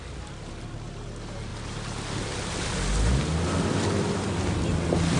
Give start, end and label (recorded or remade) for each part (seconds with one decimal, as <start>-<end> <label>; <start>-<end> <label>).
0.0-5.2 recorded